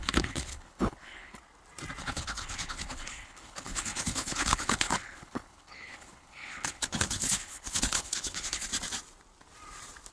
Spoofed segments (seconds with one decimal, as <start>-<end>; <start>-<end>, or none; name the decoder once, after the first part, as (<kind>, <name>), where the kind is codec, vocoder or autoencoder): 0.0-1.4 (codec, HILCodec); 2.0-8.7